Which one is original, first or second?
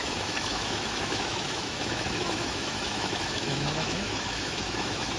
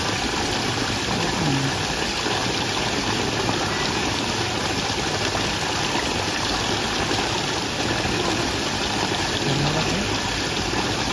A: second